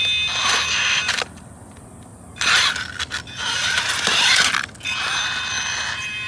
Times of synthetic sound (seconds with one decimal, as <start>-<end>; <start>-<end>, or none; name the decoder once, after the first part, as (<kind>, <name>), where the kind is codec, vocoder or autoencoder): none